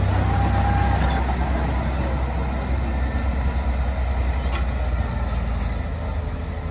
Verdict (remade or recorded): recorded